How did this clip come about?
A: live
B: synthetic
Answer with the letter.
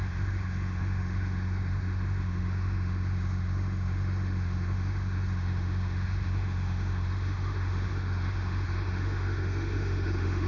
B